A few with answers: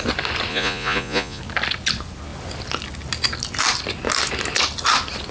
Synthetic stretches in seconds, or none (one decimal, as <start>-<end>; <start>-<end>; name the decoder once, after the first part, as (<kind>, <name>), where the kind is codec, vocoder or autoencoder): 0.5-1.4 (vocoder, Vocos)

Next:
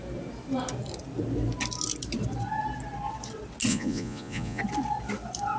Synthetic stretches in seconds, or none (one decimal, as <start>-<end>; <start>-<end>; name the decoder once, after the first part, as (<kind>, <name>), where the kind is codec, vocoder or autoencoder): 3.7-4.6 (vocoder, Vocos)

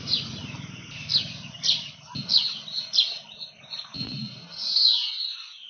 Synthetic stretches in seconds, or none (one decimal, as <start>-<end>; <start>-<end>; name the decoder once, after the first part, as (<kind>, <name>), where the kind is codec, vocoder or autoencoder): 0.0-0.4 (vocoder, Vocos); 3.8-4.5

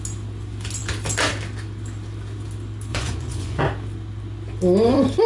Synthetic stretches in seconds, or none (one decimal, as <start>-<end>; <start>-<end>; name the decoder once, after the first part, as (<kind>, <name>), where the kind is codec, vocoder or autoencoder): 2.9-3.6 (vocoder, Vocos)

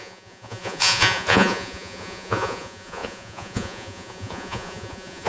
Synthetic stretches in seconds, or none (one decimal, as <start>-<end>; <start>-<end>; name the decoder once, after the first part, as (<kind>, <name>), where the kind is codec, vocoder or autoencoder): 0.0-5.3 (vocoder, Vocos)